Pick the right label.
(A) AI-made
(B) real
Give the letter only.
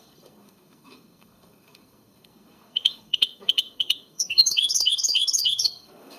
A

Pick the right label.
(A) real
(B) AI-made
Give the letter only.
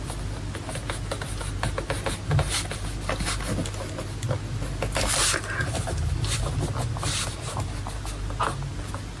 A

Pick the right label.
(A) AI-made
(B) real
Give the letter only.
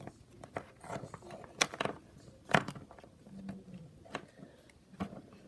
B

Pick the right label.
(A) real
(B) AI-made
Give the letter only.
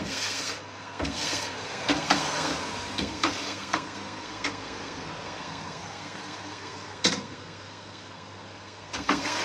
B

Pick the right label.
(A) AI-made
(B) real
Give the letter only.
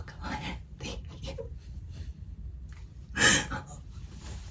B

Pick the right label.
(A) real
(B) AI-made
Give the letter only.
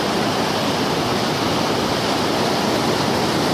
A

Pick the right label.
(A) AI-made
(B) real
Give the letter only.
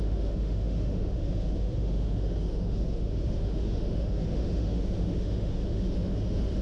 A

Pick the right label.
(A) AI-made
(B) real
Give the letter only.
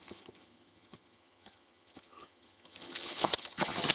A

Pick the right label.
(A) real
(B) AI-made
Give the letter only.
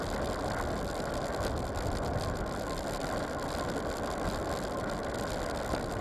A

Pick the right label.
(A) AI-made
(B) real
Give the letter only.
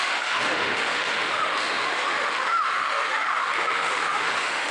A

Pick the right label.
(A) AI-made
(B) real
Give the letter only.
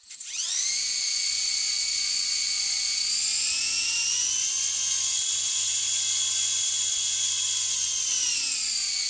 A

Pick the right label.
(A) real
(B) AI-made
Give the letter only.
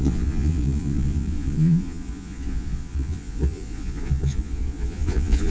B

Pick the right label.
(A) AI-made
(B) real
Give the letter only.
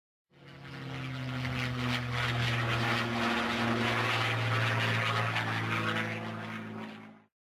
B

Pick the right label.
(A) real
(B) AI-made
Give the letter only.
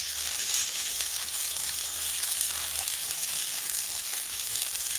B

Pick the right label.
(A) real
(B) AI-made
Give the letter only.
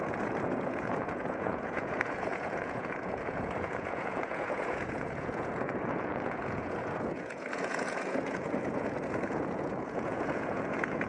B